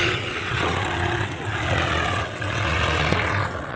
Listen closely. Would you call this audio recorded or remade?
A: remade